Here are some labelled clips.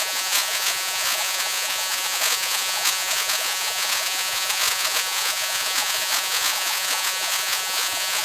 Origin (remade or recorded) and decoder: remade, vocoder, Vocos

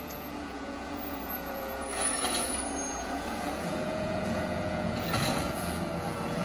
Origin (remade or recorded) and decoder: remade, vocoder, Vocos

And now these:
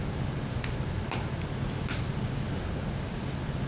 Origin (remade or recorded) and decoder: recorded